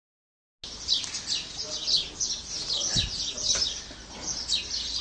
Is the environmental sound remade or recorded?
recorded